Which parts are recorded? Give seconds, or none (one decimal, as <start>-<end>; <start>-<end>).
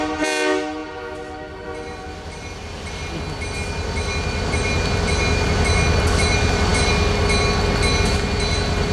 0.0-8.9